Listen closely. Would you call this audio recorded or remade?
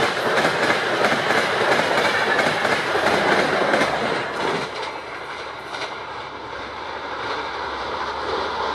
remade